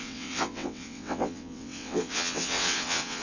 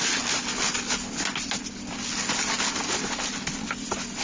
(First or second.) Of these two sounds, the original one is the second